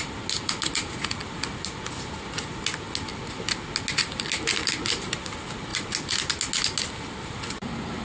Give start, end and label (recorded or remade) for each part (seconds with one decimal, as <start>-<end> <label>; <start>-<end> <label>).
0.0-8.0 recorded